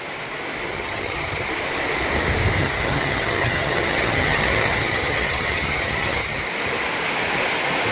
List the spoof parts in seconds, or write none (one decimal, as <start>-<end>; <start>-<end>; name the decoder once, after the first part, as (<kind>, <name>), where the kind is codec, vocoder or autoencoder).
0.7-1.5 (vocoder, HiFi-GAN); 2.6-6.4